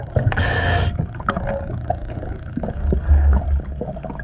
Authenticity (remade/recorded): remade